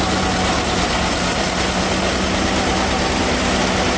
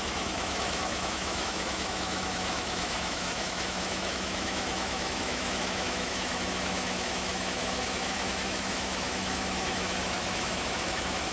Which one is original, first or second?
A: first